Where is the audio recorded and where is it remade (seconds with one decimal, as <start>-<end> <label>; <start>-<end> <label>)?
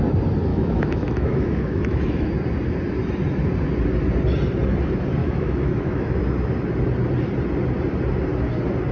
0.0-0.5 recorded; 0.5-2.3 remade; 2.3-5.2 recorded; 5.2-6.2 remade; 6.2-8.9 recorded